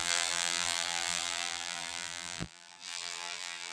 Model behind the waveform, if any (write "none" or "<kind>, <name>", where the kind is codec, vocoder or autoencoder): vocoder, BigVGAN v2